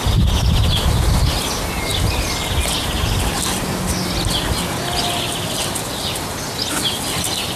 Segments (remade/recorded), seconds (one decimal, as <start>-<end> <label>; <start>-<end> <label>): 0.0-7.6 recorded